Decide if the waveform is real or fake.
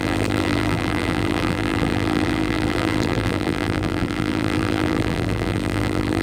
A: fake